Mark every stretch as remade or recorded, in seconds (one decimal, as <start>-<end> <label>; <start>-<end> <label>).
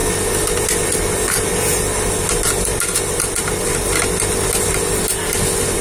0.0-5.8 recorded